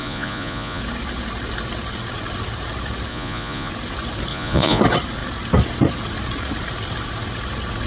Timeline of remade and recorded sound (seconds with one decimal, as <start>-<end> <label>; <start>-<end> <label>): 0.0-0.8 remade; 0.8-3.1 recorded; 3.1-3.7 remade; 3.7-4.3 recorded; 4.3-4.8 remade; 4.8-7.9 recorded